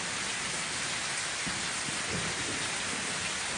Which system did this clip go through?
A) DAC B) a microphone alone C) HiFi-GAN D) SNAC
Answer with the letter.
B